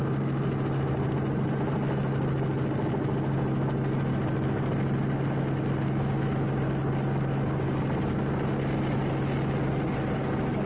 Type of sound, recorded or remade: recorded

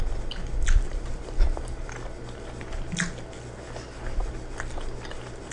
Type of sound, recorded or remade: recorded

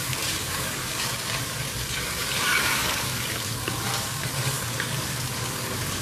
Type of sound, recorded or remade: remade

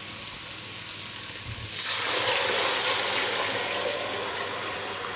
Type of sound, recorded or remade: recorded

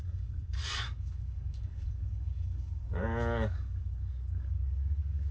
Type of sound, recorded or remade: remade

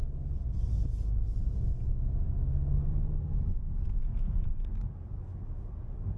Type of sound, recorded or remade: recorded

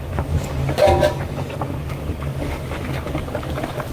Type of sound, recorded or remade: remade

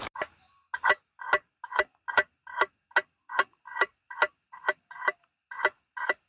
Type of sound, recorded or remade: recorded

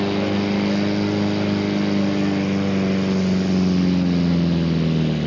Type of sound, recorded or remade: recorded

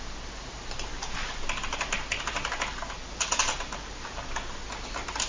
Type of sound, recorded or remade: recorded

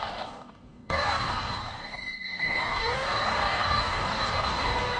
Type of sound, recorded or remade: remade